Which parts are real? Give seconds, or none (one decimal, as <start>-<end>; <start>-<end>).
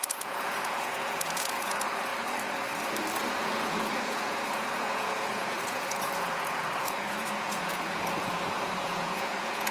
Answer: 2.1-3.3